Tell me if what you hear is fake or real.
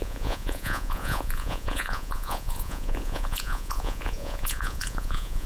fake